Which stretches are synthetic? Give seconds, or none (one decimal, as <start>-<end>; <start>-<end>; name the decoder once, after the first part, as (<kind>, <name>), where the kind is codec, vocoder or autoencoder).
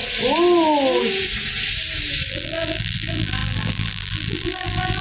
2.3-5.0 (vocoder, BigVGAN v2)